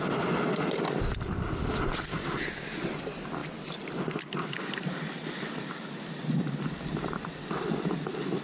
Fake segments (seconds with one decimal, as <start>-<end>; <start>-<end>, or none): none